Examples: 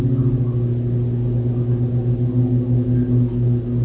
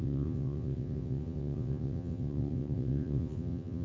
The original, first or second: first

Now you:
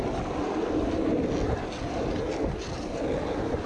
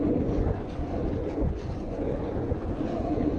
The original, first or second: first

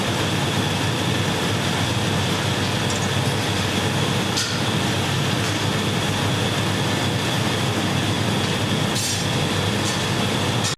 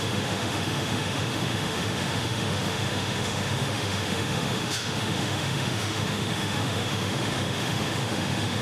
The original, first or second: first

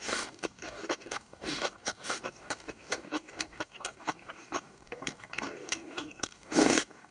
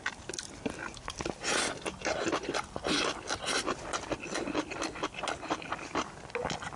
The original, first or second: second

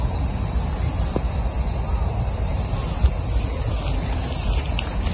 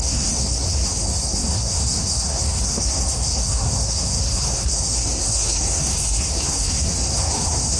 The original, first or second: first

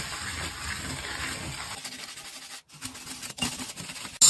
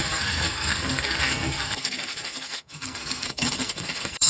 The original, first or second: first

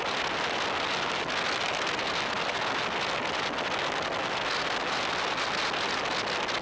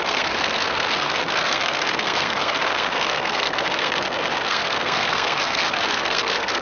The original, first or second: first